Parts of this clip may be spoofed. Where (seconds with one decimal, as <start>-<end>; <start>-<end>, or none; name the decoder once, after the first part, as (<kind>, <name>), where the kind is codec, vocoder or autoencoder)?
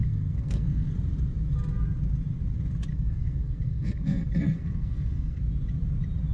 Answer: 0.0-0.9 (codec, SNAC); 2.9-5.4